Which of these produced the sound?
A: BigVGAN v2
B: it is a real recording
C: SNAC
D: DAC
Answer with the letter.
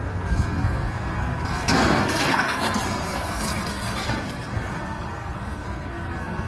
C